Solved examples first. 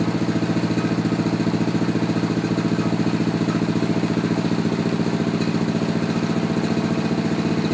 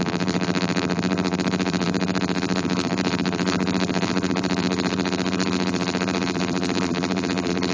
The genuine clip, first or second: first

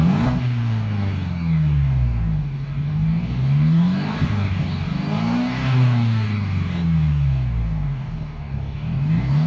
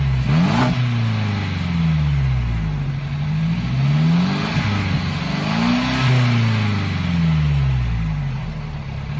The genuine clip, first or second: second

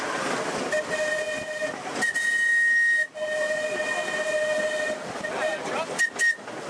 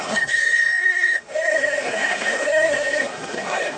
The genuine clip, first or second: first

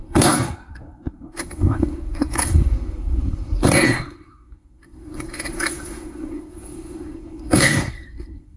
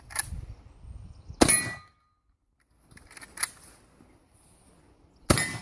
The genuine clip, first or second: second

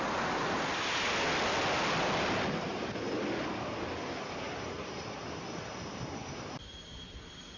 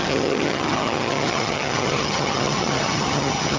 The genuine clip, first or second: first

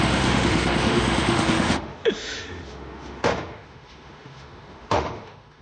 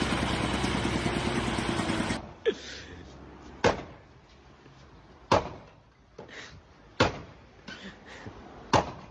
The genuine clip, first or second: second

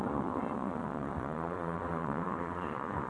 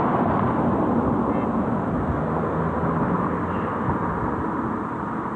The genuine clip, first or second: second